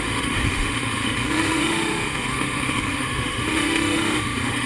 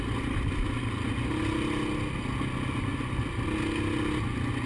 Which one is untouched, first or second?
second